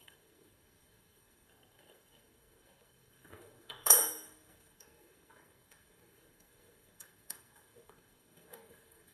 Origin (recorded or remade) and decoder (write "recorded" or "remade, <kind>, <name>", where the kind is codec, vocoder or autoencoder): remade, codec, SNAC